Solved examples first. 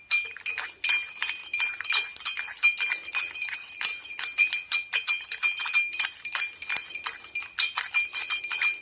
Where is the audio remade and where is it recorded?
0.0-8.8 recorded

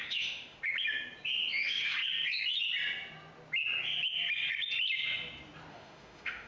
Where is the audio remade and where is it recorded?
0.0-0.6 remade; 0.6-1.5 recorded; 1.5-2.0 remade; 2.0-5.7 recorded; 5.7-6.5 remade

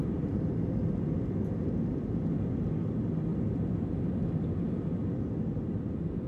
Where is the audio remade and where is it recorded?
0.0-6.3 recorded

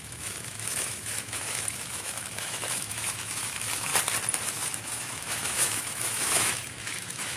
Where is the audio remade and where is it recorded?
0.0-3.9 remade; 3.9-4.5 recorded; 4.5-7.4 remade

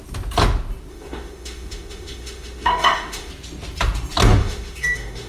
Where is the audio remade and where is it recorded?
0.0-0.9 recorded; 0.9-3.3 remade; 3.3-4.4 recorded; 4.4-5.3 remade

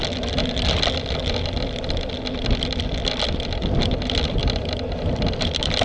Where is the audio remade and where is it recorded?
0.0-5.8 recorded

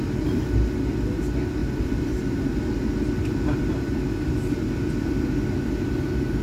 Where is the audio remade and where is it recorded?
0.0-6.4 recorded

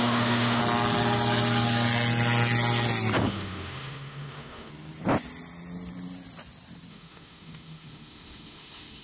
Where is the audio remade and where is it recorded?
0.0-0.6 remade; 0.6-3.2 recorded; 3.2-4.7 remade; 4.7-6.9 recorded; 6.9-9.0 remade